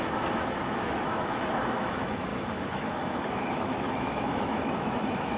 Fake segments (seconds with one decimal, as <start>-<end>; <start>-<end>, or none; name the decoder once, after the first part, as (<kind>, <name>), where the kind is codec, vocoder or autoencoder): 0.0-5.4 (autoencoder, DAC-VAE)